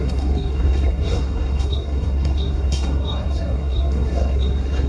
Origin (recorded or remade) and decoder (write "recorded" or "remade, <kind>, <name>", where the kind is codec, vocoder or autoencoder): remade, codec, SNAC